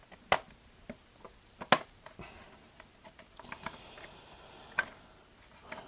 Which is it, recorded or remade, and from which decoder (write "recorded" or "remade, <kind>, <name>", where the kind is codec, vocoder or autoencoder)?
recorded